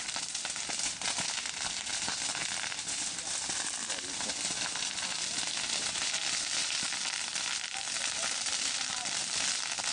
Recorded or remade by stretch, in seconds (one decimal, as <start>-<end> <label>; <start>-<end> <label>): 0.0-6.6 recorded; 6.6-7.5 remade; 7.5-9.9 recorded